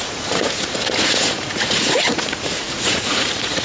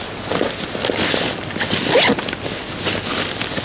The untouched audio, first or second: second